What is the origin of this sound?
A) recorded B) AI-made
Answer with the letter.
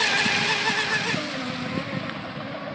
A